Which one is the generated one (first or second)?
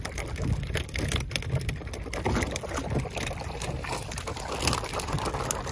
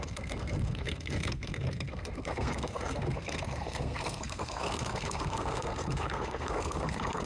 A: second